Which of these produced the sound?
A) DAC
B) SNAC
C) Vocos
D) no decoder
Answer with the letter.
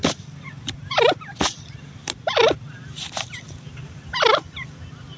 D